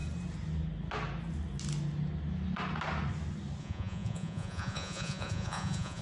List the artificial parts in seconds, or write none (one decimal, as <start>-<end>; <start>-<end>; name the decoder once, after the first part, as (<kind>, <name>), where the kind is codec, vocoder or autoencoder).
3.6-6.0 (vocoder, Vocos)